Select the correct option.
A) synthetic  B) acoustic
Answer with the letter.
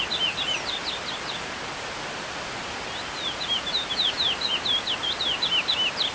A